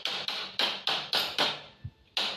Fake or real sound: real